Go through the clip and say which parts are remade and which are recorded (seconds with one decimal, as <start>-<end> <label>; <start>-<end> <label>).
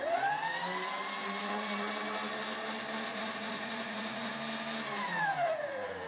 0.0-1.2 recorded; 1.2-1.9 remade; 1.9-3.1 recorded; 3.1-4.3 remade; 4.3-6.1 recorded